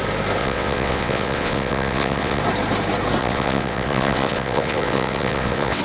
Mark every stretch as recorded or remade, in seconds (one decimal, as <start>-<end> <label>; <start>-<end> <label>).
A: 0.0-0.4 recorded; 0.4-2.4 remade; 2.4-3.2 recorded; 3.2-5.8 remade